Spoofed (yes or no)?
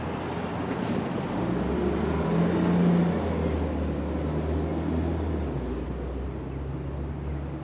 no